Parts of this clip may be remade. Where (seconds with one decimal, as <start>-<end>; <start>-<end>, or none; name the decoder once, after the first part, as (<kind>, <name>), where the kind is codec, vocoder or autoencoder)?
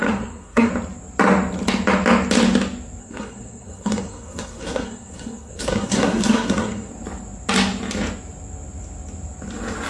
0.0-0.7 (codec, SNAC); 3.0-6.9